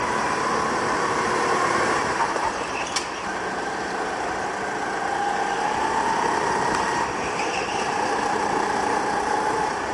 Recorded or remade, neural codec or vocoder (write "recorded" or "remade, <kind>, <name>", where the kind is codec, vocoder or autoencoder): remade, vocoder, BigVGAN v2